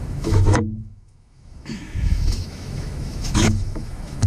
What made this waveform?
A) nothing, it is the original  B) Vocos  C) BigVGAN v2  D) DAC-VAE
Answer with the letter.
D